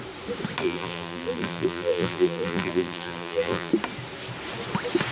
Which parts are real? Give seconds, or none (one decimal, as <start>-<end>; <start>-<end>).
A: 0.0-0.6; 3.7-5.1